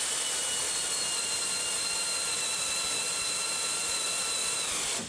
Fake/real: real